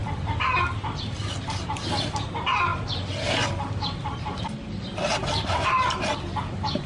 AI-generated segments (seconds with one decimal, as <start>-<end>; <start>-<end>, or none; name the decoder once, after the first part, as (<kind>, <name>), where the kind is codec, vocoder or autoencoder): none